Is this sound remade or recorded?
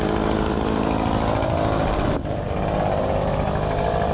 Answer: recorded